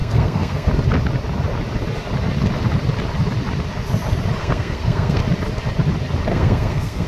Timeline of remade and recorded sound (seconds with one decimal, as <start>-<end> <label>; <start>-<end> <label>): 0.0-0.7 remade; 0.7-4.4 recorded; 4.4-5.2 remade; 5.2-6.3 recorded; 6.3-7.1 remade